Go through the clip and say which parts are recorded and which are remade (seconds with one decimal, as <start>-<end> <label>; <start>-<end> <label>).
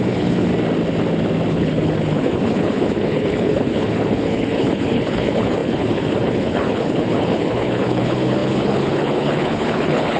0.0-0.5 remade; 0.5-1.5 recorded; 1.5-10.2 remade